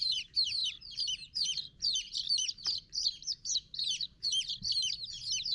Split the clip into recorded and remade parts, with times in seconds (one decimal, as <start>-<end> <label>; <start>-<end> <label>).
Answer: 0.0-4.5 remade; 4.5-5.5 recorded